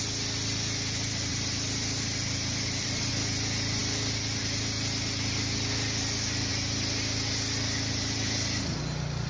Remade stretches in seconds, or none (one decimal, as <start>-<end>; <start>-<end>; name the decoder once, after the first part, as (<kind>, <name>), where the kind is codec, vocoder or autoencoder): 1.3-3.1 (vocoder, BigVGAN v2)